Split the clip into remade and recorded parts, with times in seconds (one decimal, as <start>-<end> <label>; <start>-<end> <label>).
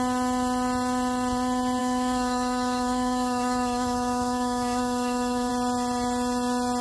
0.0-1.8 recorded; 1.8-5.5 remade; 5.5-6.8 recorded